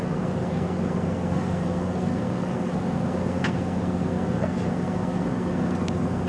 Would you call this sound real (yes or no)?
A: no